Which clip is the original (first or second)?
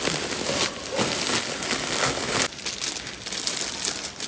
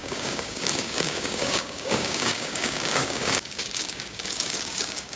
first